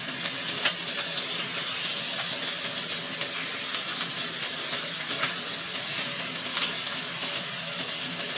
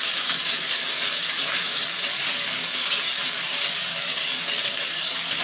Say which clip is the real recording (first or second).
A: first